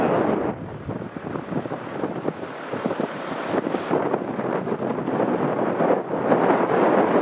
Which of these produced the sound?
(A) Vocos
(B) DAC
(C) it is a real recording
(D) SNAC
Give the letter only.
C